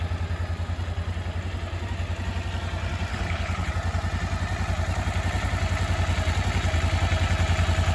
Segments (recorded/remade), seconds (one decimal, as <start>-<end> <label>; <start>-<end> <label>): 0.0-3.1 recorded; 3.1-3.7 remade; 3.7-7.9 recorded